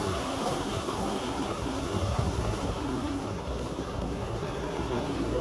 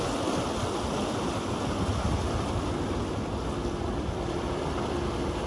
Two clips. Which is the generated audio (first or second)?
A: first